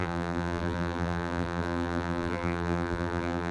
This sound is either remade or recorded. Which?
remade